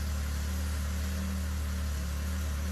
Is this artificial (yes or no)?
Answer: no